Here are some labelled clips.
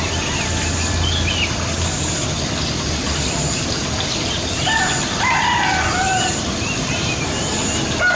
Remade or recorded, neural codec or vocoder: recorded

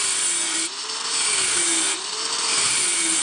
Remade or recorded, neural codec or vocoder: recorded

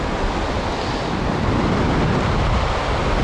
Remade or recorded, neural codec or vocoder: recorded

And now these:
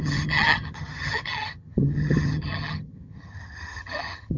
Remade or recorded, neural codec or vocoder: remade, vocoder, HiFi-GAN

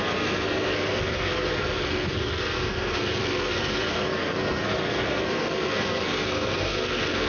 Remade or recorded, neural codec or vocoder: remade, codec, SNAC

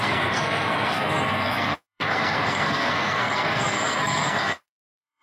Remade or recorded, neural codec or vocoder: remade, codec, SNAC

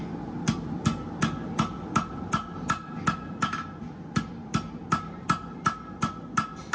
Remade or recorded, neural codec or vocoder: recorded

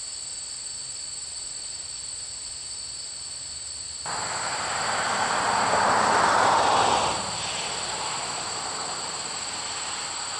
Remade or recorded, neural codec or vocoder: recorded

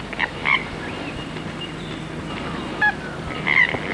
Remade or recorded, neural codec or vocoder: recorded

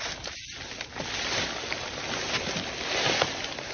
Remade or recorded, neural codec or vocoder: recorded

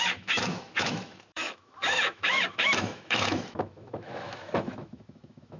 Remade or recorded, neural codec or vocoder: remade, autoencoder, DAC-VAE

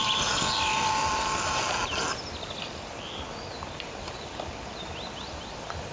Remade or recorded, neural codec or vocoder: recorded